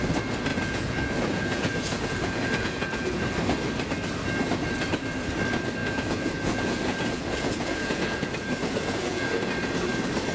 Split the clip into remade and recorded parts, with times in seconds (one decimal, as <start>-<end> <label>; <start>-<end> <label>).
0.0-0.5 recorded; 0.5-3.2 remade; 3.2-5.8 recorded; 5.8-9.5 remade; 9.5-10.3 recorded

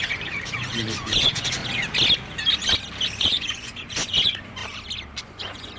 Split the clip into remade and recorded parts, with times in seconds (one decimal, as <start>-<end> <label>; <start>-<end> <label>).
0.0-1.6 remade; 1.6-3.2 recorded; 3.2-4.6 remade; 4.6-5.2 recorded; 5.2-5.8 remade

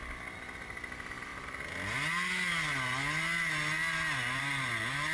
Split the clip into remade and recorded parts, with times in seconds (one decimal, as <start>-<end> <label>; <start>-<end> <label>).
0.0-5.1 recorded

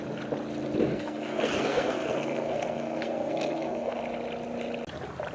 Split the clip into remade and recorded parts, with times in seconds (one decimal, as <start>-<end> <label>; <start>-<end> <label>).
0.0-0.9 recorded; 0.9-4.0 remade; 4.0-5.3 recorded

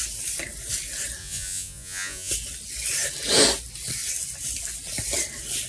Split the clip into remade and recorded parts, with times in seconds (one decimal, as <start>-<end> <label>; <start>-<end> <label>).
0.0-1.2 recorded; 1.2-2.3 remade; 2.3-5.7 recorded